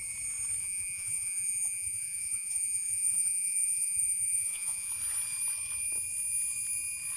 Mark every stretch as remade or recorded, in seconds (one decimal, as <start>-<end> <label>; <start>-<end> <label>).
0.0-0.6 recorded; 0.6-4.9 remade; 4.9-7.2 recorded